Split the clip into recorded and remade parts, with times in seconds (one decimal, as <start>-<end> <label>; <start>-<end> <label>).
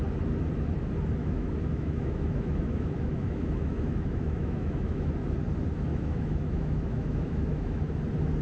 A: 0.0-1.2 recorded; 1.2-5.1 remade; 5.1-5.9 recorded; 5.9-8.0 remade; 8.0-8.4 recorded